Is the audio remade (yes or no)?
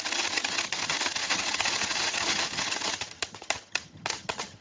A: yes